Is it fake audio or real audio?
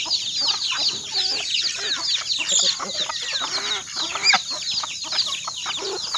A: real